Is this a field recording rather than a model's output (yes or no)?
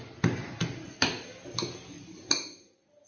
yes